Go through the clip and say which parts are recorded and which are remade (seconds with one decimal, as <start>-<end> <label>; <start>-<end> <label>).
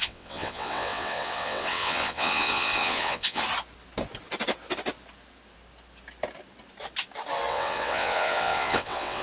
0.0-3.4 remade; 3.4-7.5 recorded; 7.5-9.2 remade